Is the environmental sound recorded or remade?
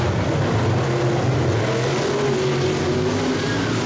recorded